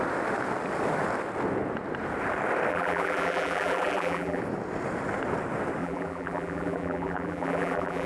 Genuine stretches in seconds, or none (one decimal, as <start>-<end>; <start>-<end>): 0.0-2.7; 4.4-5.8